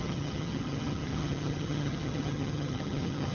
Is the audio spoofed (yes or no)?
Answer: yes